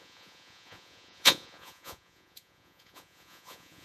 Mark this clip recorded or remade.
remade